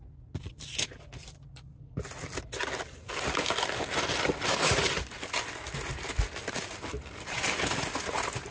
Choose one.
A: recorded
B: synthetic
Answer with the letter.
A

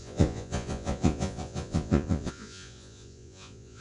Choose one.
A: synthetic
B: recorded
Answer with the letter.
A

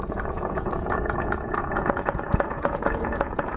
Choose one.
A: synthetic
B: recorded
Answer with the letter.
A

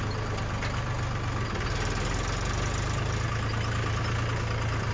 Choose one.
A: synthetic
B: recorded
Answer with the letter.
B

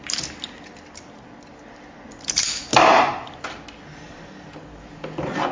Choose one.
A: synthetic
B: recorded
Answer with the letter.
B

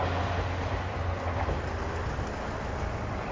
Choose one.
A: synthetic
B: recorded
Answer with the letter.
B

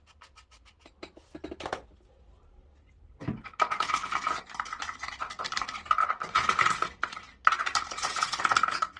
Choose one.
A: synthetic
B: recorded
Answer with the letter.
B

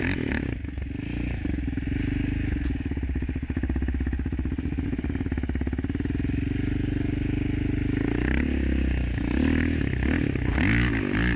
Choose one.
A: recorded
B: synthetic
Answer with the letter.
A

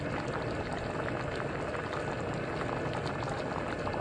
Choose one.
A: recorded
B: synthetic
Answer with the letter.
A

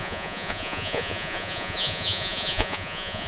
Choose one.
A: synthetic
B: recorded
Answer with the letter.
A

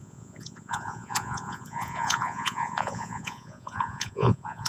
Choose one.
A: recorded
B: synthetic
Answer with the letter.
B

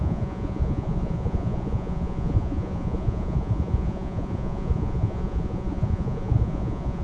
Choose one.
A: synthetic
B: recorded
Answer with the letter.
A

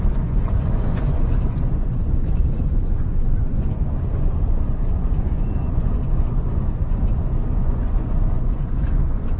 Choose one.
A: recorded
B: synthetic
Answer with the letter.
B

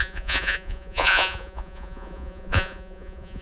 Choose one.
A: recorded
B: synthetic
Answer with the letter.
B